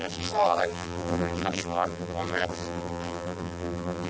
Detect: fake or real fake